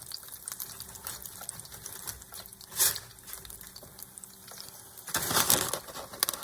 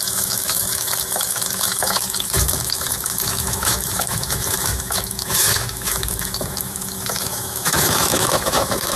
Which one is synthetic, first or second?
second